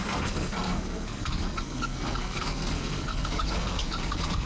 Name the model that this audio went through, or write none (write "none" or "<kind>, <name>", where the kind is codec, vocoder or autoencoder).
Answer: codec, SNAC